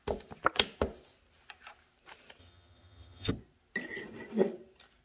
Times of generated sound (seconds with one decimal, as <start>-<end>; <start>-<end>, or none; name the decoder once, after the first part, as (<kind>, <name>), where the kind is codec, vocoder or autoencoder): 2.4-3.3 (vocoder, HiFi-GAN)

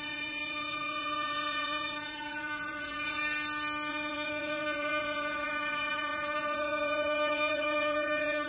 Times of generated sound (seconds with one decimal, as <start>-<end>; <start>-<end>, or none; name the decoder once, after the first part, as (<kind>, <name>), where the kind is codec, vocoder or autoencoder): 0.0-3.2 (vocoder, Vocos); 3.9-8.5

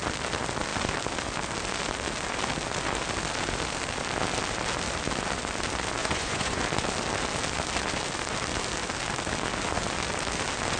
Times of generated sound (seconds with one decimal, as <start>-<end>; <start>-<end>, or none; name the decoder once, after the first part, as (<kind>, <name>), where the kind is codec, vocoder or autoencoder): 6.0-6.6 (vocoder, Vocos)

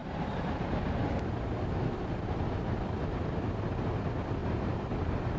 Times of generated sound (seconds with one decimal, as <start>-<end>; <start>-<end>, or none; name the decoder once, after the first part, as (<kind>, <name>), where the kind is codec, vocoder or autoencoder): 0.0-0.7 (vocoder, BigVGAN v2); 4.4-4.9

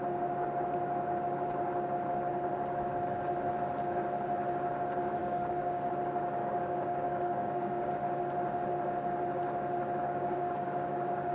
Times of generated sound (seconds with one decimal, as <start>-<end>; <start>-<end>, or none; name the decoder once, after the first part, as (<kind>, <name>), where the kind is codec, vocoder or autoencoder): 5.2-5.9 (codec, DAC); 6.4-7.9; 10.0-11.3

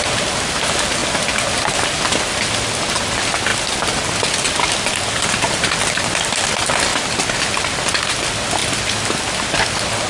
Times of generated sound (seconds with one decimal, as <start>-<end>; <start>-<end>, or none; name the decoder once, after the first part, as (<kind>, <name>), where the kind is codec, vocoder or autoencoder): none